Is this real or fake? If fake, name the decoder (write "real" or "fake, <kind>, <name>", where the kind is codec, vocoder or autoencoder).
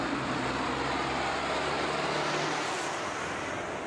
real